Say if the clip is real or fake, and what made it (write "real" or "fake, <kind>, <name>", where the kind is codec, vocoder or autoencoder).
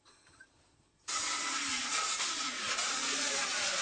fake, vocoder, Vocos